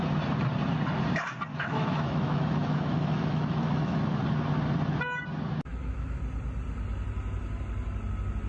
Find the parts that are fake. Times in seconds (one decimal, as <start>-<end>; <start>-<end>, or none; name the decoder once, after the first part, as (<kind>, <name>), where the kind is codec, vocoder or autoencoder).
1.5-4.2 (autoencoder, DAC-VAE); 5.7-6.2